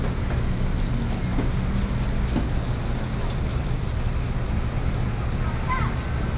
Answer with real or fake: real